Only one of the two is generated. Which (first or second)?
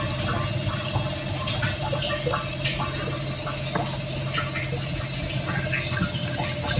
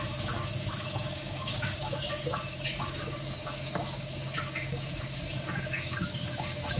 second